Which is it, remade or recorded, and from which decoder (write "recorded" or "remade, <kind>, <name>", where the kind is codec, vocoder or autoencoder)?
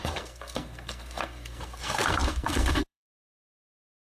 remade, codec, SNAC